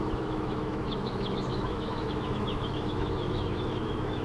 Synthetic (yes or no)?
yes